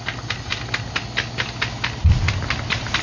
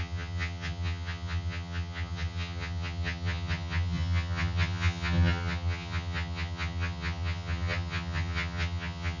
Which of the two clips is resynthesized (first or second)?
second